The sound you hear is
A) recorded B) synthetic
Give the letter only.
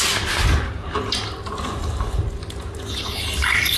A